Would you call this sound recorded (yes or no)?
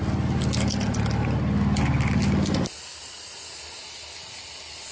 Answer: yes